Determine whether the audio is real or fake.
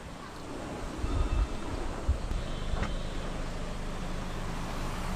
real